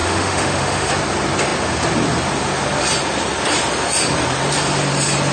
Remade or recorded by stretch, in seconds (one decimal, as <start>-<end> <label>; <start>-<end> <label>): 0.0-0.9 remade; 0.9-5.3 recorded